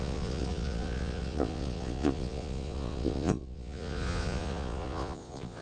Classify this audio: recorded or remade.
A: remade